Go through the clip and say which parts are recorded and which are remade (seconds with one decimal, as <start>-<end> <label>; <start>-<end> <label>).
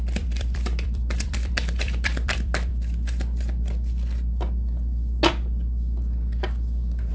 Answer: 0.0-2.7 remade; 2.7-7.1 recorded